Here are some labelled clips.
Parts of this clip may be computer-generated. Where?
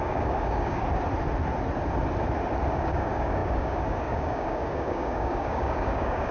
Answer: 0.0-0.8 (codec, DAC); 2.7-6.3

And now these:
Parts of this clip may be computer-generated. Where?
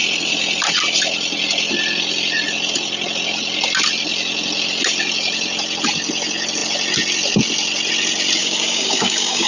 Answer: 8.4-9.5 (codec, DAC)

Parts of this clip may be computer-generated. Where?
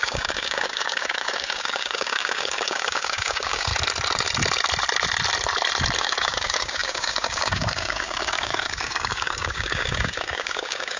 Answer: 0.0-3.7 (codec, DAC); 6.0-11.0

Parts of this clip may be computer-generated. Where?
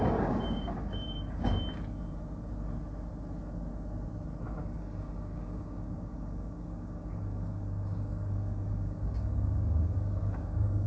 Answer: 0.0-1.6 (codec, DAC); 4.6-10.9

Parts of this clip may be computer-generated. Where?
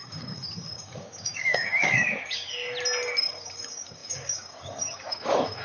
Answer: 0.0-2.6 (codec, DAC); 3.2-5.6